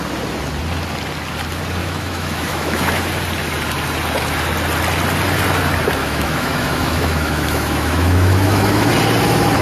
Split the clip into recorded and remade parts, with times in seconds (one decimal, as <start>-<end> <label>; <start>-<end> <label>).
0.0-1.8 recorded; 1.8-3.0 remade; 3.0-6.0 recorded; 6.0-8.9 remade; 8.9-9.6 recorded